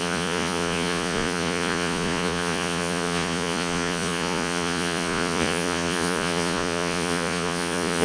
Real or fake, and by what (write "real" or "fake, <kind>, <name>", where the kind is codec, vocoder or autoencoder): fake, vocoder, Vocos